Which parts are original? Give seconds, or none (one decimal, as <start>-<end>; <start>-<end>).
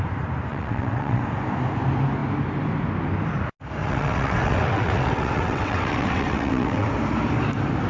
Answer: 0.0-0.5; 1.2-3.8; 6.9-7.9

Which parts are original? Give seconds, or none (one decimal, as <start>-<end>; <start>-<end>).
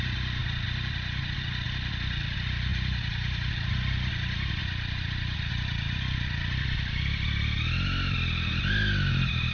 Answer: 0.0-2.7; 4.1-4.6; 5.5-9.5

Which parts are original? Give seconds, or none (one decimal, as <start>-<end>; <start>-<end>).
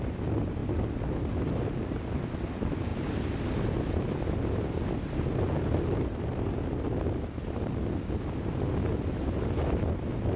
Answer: 0.0-10.4